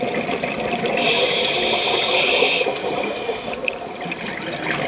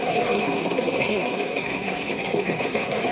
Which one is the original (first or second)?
first